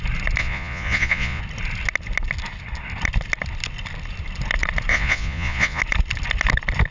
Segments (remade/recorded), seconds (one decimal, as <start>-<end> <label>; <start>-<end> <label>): 0.0-0.4 recorded; 0.4-1.4 remade; 1.4-4.9 recorded; 4.9-5.8 remade; 5.8-6.9 recorded